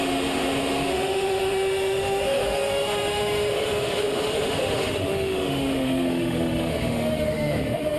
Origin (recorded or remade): remade